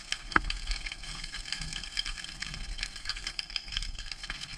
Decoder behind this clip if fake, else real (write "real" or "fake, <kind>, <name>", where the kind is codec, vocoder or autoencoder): fake, codec, SNAC